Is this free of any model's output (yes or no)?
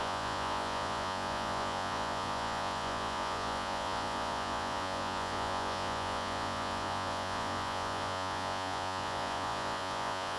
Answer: no